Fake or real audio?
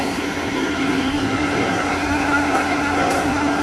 fake